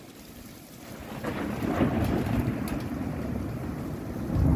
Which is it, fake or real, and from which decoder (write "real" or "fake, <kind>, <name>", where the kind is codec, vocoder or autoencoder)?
real